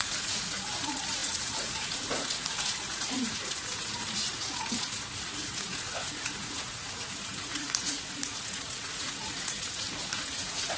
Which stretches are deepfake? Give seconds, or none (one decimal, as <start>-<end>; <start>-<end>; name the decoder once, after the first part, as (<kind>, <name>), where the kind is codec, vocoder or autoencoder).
0.0-10.8 (vocoder, Vocos)